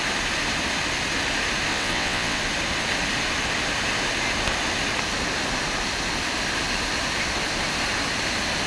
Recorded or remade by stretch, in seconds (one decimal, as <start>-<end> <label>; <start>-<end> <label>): 0.0-1.7 recorded; 1.7-2.4 remade; 2.4-8.7 recorded